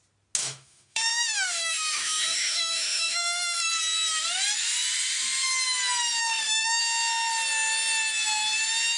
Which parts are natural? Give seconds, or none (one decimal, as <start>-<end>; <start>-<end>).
0.0-0.4; 3.7-6.2; 6.8-9.0